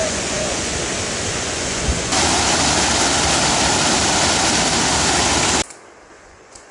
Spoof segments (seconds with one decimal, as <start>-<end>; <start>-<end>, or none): 0.0-0.7; 1.3-2.1; 6.1-6.7